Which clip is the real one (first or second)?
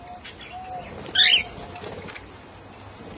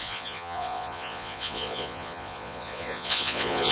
first